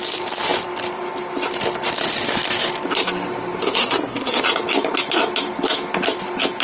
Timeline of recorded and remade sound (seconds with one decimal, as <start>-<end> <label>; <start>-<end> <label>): 0.0-3.8 recorded; 3.8-4.4 remade; 4.4-6.6 recorded